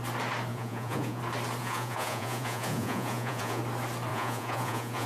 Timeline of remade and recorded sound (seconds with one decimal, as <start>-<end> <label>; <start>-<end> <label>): 0.0-0.5 recorded; 0.5-1.2 remade; 1.2-1.6 recorded; 1.6-3.6 remade; 3.6-4.1 recorded; 4.1-5.1 remade